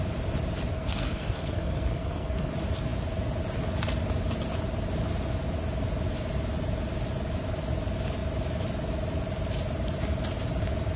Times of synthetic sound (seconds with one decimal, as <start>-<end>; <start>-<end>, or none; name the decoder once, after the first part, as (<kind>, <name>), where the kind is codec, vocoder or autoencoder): 0.7-2.5 (codec, SNAC)